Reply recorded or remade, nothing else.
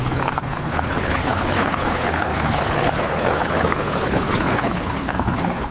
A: remade